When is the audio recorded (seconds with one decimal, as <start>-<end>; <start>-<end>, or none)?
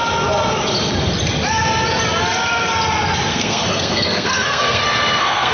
0.0-3.3